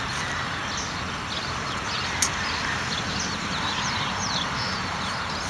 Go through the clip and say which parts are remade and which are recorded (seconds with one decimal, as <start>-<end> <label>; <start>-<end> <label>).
0.0-0.6 remade; 0.6-3.3 recorded; 3.3-5.5 remade